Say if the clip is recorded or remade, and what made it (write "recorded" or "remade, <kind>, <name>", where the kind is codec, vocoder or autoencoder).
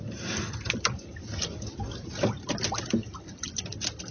recorded